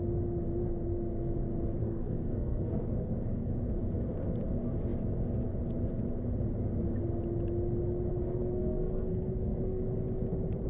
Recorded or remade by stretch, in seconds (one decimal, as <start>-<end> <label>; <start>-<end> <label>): 0.0-1.8 recorded; 1.8-3.5 remade; 3.5-8.1 recorded; 8.1-9.8 remade; 9.8-10.7 recorded